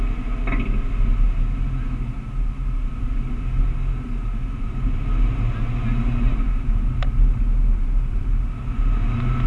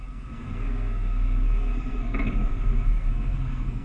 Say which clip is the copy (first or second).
second